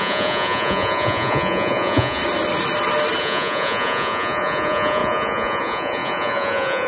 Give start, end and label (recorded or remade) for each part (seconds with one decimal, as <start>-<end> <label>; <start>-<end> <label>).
0.0-2.2 remade; 2.2-3.2 recorded; 3.2-6.9 remade